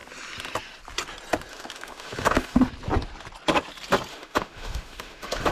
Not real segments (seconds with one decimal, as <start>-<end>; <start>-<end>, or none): 1.5-2.7; 4.1-5.5